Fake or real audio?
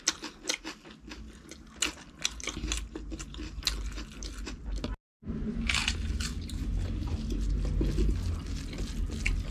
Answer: real